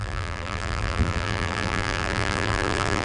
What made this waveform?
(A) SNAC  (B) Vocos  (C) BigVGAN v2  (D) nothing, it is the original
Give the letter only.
C